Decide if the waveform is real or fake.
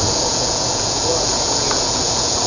fake